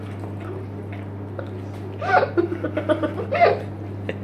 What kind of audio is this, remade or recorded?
recorded